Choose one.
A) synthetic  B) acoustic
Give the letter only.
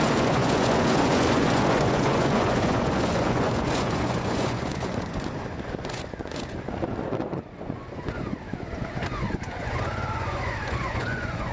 A